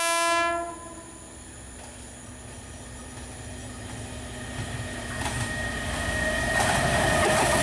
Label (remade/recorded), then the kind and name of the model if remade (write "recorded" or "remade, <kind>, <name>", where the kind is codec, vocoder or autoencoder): recorded